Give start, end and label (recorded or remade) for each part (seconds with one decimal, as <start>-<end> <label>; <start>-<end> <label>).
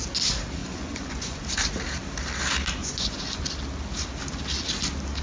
0.0-0.6 recorded; 0.6-1.4 remade; 1.4-2.8 recorded; 2.8-3.4 remade; 3.4-5.2 recorded